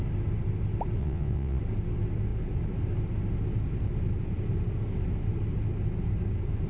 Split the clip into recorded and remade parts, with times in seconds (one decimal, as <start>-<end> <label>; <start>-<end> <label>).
0.0-1.0 recorded; 1.0-1.6 remade; 1.6-6.7 recorded